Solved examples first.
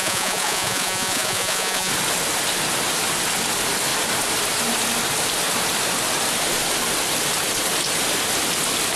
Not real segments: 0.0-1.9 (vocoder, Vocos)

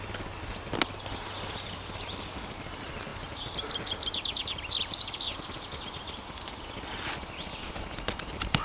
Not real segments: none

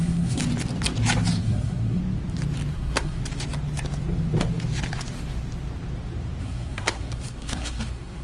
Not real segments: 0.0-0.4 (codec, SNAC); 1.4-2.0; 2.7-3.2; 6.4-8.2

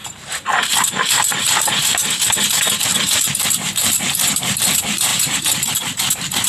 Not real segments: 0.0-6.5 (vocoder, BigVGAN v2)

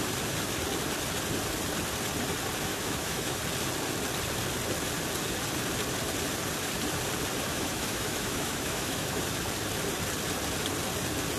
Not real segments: 2.7-3.4 (autoencoder, DAC-VAE); 7.5-9.2

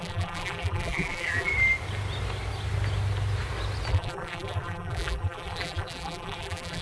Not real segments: 0.0-1.5 (vocoder, BigVGAN v2); 3.9-6.8